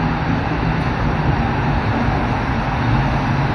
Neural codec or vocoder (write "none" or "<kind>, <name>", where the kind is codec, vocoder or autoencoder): none